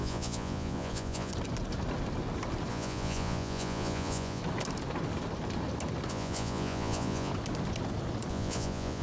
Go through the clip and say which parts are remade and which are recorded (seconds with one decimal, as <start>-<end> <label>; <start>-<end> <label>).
0.0-1.3 remade; 1.3-2.7 recorded; 2.7-4.4 remade; 4.4-6.1 recorded; 6.1-7.3 remade; 7.3-8.3 recorded; 8.3-9.0 remade